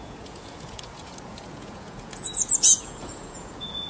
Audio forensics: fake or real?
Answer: fake